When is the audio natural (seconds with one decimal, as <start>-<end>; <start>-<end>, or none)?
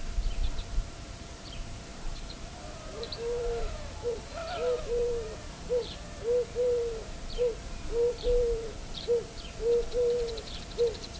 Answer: none